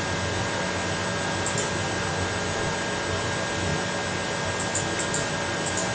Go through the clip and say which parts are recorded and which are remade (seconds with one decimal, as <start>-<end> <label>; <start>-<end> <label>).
0.0-5.9 recorded